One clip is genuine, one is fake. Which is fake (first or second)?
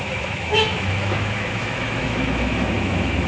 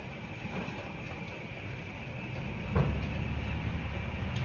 first